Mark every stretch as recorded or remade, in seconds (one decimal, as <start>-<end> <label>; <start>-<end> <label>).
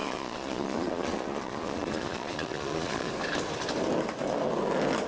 0.0-3.1 remade; 3.1-5.1 recorded